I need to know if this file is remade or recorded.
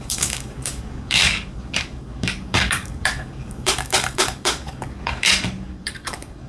remade